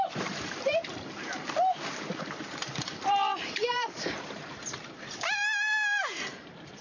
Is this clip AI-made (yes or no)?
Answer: yes